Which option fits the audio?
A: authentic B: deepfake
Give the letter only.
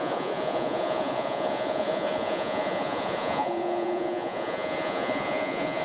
B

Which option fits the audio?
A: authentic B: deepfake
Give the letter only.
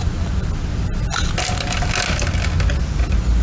A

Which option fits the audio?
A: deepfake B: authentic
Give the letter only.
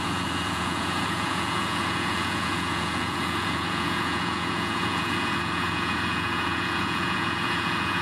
A